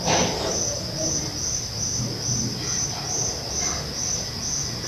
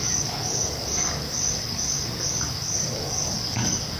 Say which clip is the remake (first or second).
second